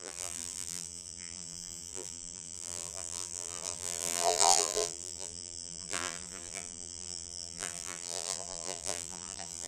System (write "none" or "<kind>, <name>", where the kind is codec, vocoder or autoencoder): vocoder, BigVGAN v2